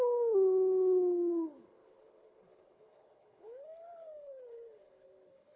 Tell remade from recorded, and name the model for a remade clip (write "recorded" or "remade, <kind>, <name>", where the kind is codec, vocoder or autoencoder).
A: remade, codec, HILCodec